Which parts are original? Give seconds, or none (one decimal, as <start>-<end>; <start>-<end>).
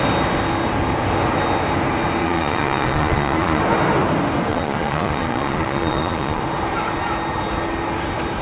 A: 0.0-2.2; 3.6-4.5; 6.4-8.4